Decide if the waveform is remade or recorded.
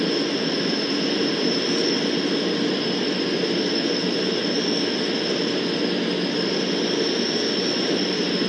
recorded